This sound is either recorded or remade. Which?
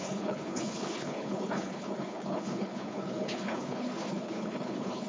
remade